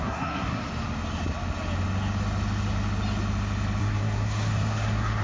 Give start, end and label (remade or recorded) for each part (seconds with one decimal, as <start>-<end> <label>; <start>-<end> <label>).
0.0-0.7 remade; 0.7-3.8 recorded; 3.8-5.2 remade